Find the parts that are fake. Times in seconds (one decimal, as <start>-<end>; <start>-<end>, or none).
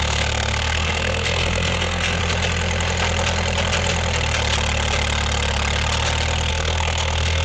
0.0-2.2; 6.5-7.4